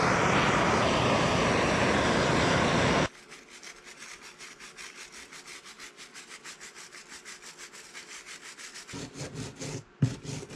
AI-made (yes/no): no